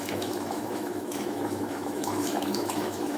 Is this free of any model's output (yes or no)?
no